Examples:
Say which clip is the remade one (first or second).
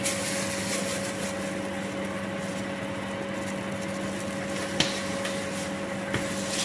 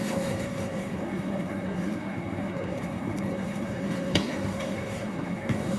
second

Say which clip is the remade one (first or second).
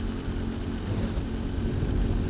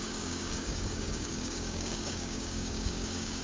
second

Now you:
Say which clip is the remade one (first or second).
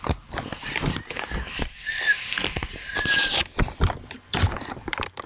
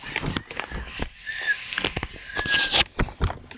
first